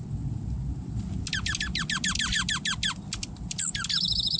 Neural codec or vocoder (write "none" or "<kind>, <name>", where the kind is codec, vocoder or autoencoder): none